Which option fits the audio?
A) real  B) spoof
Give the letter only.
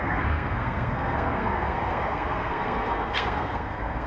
B